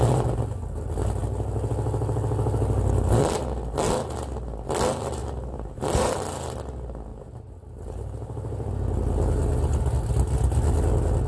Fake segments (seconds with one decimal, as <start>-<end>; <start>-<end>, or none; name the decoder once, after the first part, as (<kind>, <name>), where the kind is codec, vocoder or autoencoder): 5.2-6.2 (vocoder, BigVGAN v2); 7.1-8.7